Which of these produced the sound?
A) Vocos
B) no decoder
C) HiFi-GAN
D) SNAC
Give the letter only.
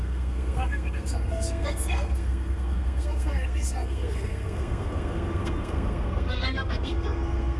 D